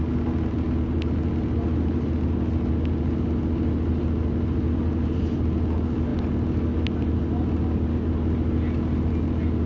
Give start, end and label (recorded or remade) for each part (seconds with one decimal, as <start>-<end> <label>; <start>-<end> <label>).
0.0-9.7 recorded